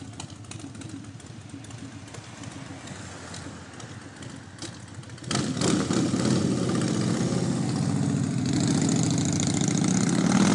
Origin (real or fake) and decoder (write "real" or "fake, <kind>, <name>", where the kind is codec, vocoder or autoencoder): real